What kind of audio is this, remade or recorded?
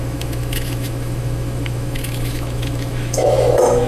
remade